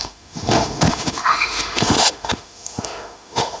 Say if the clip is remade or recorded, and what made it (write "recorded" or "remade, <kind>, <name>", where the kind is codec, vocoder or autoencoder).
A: remade, autoencoder, DAC-VAE